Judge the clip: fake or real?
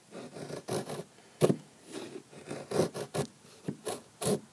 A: real